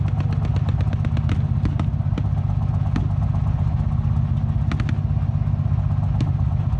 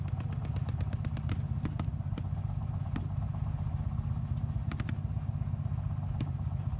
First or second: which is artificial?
second